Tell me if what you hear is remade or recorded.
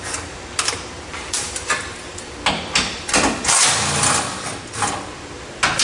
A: recorded